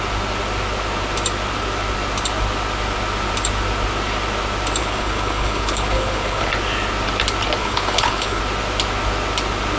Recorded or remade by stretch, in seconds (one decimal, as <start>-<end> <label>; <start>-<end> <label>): 0.0-4.8 recorded; 4.8-6.5 remade; 6.5-7.6 recorded; 7.6-8.4 remade; 8.4-9.8 recorded

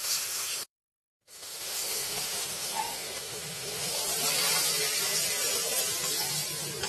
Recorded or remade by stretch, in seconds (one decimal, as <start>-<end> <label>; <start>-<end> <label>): 0.0-4.0 remade; 4.0-6.9 recorded

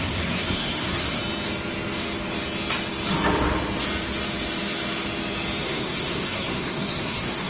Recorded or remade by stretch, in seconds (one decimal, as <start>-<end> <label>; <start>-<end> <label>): 0.0-1.2 remade; 1.2-5.6 recorded; 5.6-7.5 remade

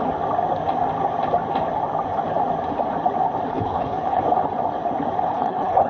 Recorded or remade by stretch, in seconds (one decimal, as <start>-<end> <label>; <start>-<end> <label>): 0.0-3.5 recorded; 3.5-4.2 remade; 4.2-5.3 recorded; 5.3-5.9 remade

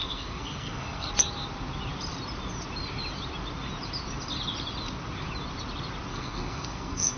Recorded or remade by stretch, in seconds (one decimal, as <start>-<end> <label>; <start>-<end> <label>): 0.0-1.1 remade; 1.1-6.1 recorded; 6.1-7.2 remade

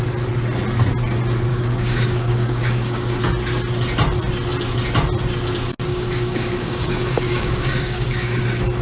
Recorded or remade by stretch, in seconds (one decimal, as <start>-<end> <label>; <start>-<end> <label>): 0.0-1.5 recorded; 1.5-3.2 remade; 3.2-5.9 recorded; 5.9-8.4 remade; 8.4-8.8 recorded

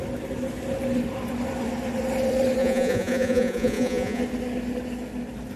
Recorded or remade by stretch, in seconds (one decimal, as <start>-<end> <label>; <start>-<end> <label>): 0.0-2.6 recorded; 2.6-4.2 remade; 4.2-5.6 recorded